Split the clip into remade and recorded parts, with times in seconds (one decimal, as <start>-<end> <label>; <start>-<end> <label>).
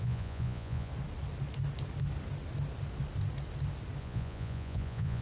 0.0-0.9 remade; 0.9-4.0 recorded; 4.0-5.2 remade